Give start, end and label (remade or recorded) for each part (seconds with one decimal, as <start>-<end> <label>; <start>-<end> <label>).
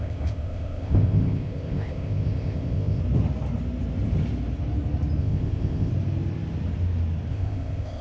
0.0-3.0 remade; 3.0-5.2 recorded; 5.2-5.9 remade; 5.9-7.3 recorded; 7.3-8.0 remade